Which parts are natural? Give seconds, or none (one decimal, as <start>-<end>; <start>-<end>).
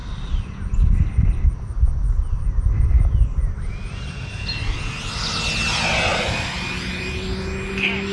0.0-8.1